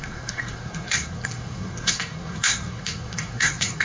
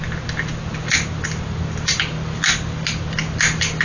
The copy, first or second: first